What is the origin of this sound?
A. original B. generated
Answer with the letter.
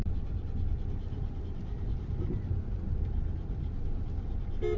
A